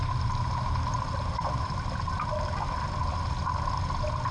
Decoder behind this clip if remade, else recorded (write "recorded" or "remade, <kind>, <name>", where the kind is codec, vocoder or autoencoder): recorded